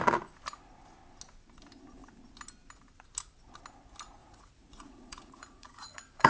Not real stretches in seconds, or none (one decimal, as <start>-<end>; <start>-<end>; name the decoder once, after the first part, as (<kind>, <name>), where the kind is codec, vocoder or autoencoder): 4.2-6.3 (vocoder, Vocos)